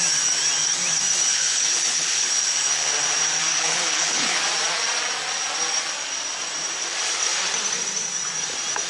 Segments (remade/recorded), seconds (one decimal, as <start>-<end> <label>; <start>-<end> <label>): 0.0-1.3 recorded; 1.3-2.3 remade; 2.3-3.5 recorded; 3.5-4.4 remade; 4.4-8.9 recorded